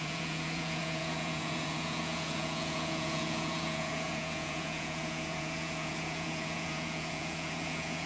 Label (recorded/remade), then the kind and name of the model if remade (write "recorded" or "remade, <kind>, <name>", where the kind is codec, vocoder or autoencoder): remade, vocoder, Vocos